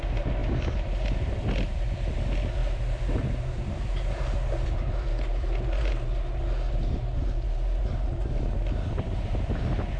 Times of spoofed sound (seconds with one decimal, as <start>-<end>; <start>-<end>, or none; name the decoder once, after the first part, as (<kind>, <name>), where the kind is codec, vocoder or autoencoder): none